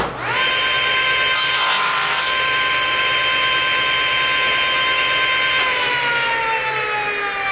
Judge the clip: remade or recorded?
recorded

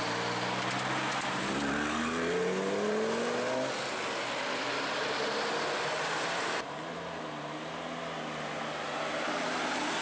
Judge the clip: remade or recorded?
recorded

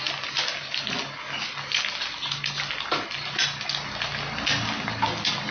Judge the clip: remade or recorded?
recorded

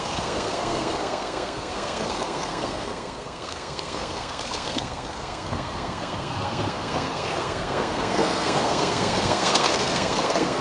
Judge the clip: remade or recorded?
remade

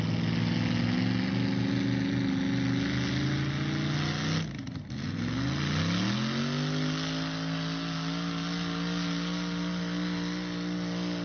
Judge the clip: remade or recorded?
recorded